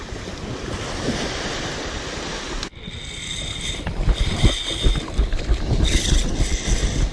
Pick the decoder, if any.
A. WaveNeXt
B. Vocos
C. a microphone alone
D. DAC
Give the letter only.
C